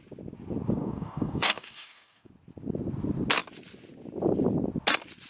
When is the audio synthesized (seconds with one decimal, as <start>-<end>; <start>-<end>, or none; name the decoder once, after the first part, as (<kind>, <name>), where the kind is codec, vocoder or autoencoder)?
0.8-2.3 (codec, DAC)